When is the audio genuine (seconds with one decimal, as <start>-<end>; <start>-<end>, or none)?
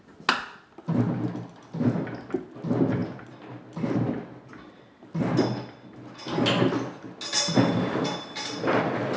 0.0-9.2